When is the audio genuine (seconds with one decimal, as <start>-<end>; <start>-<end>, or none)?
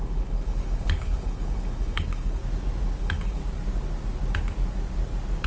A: 2.4-3.0; 3.4-5.5